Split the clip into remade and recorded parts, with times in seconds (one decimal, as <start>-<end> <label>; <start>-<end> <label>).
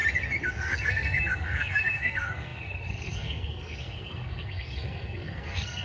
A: 0.0-0.5 recorded; 0.5-5.8 remade